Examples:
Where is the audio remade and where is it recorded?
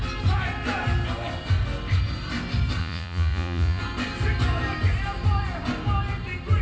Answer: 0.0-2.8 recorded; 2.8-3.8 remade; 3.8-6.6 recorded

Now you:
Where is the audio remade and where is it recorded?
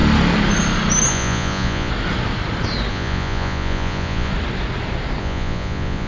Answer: 0.0-1.1 recorded; 1.1-1.9 remade; 1.9-2.9 recorded; 2.9-4.3 remade; 4.3-5.2 recorded; 5.2-6.1 remade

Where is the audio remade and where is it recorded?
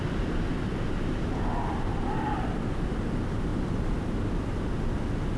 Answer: 0.0-5.4 recorded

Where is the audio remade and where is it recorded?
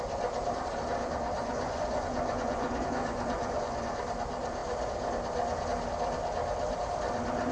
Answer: 0.0-1.4 recorded; 1.4-4.0 remade; 4.0-7.5 recorded